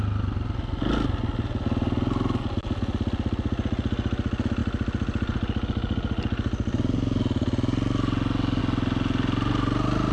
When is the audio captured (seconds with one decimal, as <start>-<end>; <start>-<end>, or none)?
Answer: 0.0-10.1